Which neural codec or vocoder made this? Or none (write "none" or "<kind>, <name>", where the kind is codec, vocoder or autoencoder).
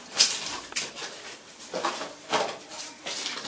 none